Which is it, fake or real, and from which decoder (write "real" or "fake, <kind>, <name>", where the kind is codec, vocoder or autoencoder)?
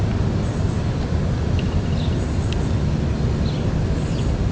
real